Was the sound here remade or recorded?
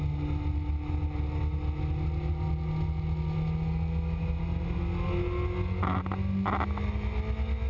recorded